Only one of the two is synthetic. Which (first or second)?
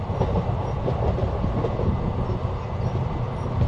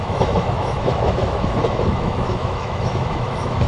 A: second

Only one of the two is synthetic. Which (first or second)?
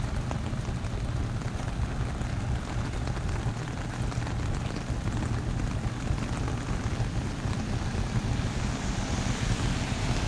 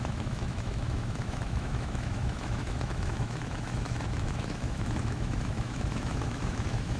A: second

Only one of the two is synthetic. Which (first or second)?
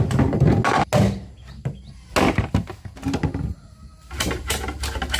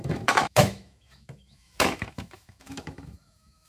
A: second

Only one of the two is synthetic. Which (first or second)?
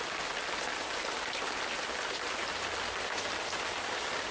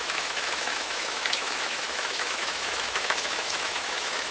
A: second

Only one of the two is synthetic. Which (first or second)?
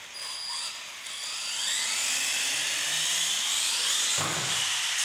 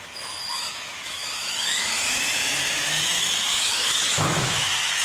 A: second